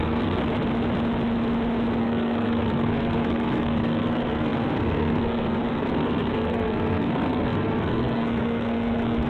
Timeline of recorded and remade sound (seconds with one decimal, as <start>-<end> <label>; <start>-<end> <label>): 0.0-0.4 remade; 0.4-2.0 recorded; 2.0-9.3 remade